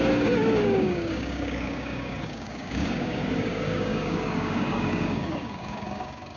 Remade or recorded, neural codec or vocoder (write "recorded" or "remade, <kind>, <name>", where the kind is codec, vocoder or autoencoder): remade, codec, DAC